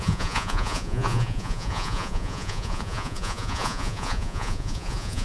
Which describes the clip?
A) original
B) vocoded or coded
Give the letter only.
B